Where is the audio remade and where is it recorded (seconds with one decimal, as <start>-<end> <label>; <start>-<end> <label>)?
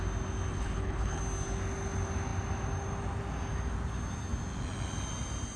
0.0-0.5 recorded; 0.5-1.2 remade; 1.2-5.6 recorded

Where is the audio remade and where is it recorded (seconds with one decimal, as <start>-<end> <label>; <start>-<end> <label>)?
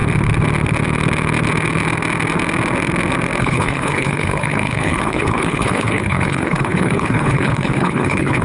0.0-3.4 recorded; 3.4-8.4 remade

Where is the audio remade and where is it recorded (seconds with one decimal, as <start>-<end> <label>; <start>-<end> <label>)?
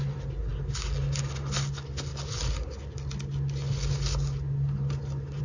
0.0-5.4 recorded